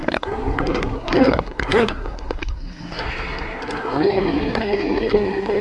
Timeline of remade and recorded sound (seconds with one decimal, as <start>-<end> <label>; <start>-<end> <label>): 0.0-5.6 remade

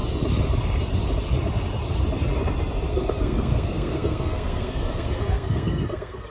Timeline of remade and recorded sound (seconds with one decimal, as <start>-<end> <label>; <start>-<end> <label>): 0.0-2.9 recorded; 2.9-6.3 remade

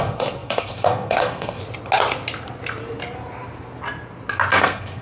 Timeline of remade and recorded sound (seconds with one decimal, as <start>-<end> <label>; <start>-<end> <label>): 0.0-1.6 remade; 1.6-4.6 recorded; 4.6-5.0 remade

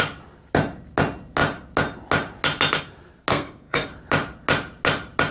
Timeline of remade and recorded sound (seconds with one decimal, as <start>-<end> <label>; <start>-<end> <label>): 0.0-3.3 recorded; 3.3-3.9 remade; 3.9-5.3 recorded

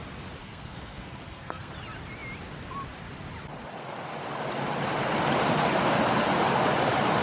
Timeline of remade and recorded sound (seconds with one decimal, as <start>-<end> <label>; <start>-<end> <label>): 0.0-0.4 recorded; 0.4-1.7 remade; 1.7-7.2 recorded

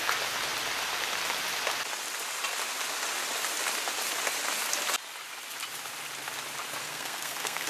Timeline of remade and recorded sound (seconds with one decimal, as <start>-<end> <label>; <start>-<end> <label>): 0.0-6.8 recorded; 6.8-7.7 remade

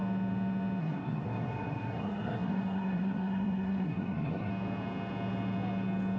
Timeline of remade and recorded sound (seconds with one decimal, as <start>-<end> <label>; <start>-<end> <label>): 0.0-0.8 recorded; 0.8-4.5 remade; 4.5-6.2 recorded